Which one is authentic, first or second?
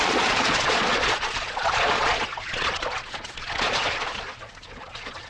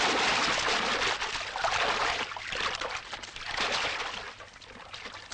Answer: second